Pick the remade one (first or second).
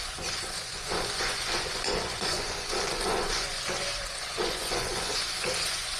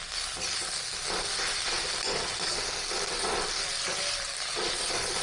first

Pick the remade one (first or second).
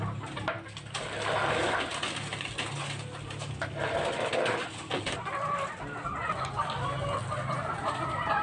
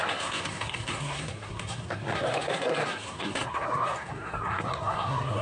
second